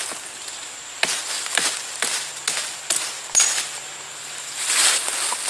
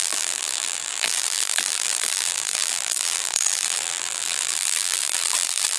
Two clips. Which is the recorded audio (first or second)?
first